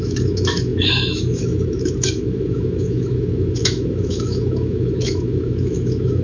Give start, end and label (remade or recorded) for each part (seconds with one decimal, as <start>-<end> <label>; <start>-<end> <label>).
0.0-6.2 remade